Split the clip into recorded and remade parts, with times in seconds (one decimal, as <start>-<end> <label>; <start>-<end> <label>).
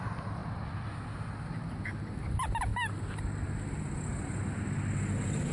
0.0-5.5 recorded